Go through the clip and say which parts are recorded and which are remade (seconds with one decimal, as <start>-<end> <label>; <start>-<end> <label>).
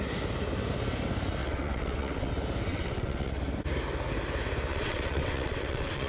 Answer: 0.0-1.4 recorded; 1.4-2.3 remade; 2.3-2.7 recorded; 2.7-3.4 remade; 3.4-4.7 recorded; 4.7-6.1 remade